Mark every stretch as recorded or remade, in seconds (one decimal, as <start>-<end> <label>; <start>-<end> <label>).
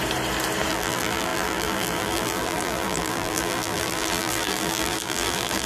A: 0.0-0.7 recorded; 0.7-5.7 remade